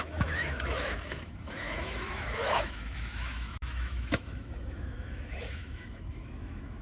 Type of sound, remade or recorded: remade